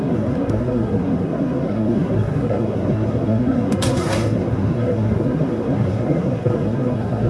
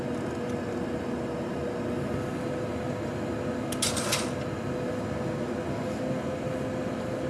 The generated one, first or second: first